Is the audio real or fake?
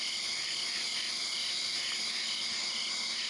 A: real